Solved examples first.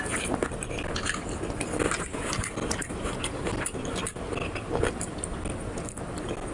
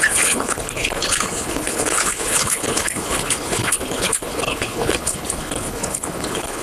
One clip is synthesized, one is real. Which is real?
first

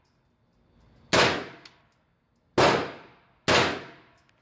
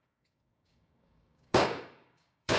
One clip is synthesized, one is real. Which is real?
first